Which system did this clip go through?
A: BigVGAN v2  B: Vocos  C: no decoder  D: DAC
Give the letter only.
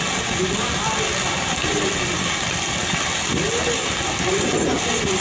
C